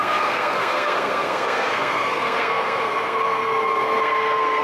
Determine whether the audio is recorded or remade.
remade